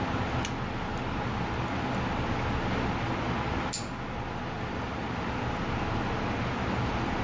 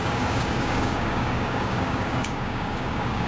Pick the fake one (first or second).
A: second